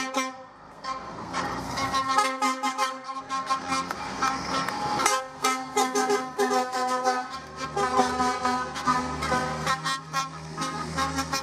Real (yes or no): no